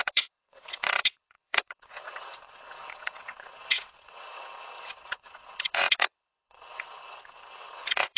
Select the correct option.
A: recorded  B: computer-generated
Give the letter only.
B